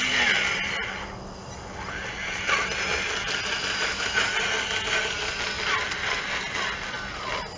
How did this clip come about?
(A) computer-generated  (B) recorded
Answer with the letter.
B